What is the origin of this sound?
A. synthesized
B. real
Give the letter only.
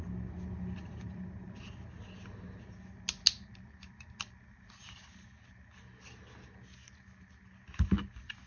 B